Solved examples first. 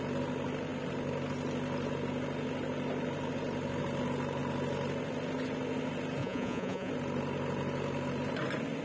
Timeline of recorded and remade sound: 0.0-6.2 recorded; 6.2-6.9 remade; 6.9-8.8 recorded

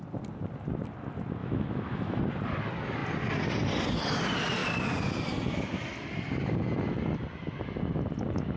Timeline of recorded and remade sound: 0.0-1.4 recorded; 1.4-2.2 remade; 2.2-8.6 recorded